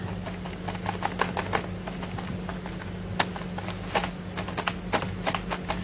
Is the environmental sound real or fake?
real